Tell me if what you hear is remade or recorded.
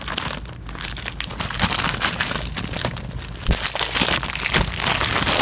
recorded